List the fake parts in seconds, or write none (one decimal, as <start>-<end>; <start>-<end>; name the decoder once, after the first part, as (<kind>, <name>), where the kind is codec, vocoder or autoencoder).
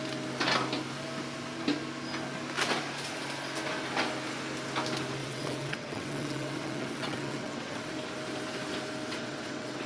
5.2-7.9 (vocoder, WaveNeXt); 9.1-9.9